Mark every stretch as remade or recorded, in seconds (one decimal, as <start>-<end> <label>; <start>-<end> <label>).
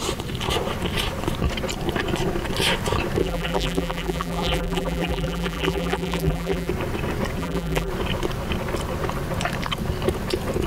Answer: 0.0-3.2 recorded; 3.2-6.7 remade; 6.7-7.4 recorded; 7.4-7.9 remade; 7.9-10.7 recorded